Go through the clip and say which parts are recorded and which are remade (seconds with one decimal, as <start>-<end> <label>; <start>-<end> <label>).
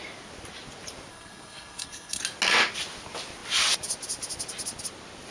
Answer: 0.0-1.1 recorded; 1.1-2.2 remade; 2.2-5.3 recorded